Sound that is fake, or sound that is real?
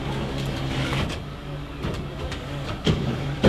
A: fake